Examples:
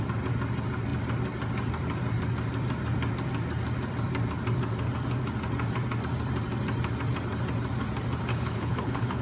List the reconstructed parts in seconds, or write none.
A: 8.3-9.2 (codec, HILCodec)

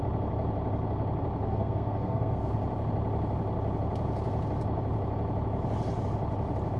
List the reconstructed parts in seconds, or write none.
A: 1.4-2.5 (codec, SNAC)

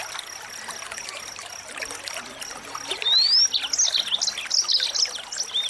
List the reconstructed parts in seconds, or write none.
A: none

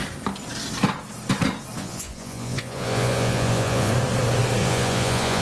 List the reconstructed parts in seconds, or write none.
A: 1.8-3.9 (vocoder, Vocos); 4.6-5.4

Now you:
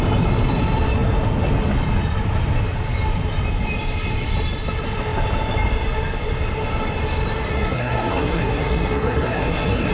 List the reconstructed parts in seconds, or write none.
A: 7.5-9.9 (codec, SNAC)

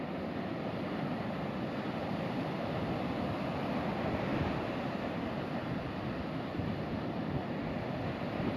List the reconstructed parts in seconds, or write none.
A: 0.0-4.3 (vocoder, BigVGAN v2); 8.2-8.6

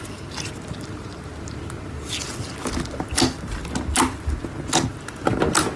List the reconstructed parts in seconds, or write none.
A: none